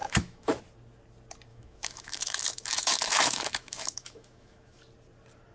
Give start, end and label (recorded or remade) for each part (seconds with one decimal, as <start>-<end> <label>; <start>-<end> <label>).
0.0-0.6 remade; 0.6-1.5 recorded; 1.5-4.8 remade; 4.8-5.5 recorded